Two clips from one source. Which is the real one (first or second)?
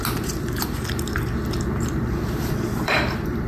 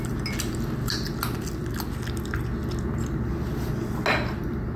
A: second